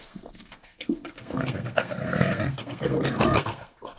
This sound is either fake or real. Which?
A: fake